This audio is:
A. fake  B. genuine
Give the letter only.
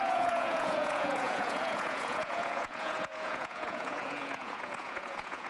A